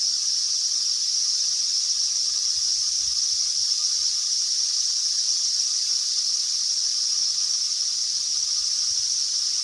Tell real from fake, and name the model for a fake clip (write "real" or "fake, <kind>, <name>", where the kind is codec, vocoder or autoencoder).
real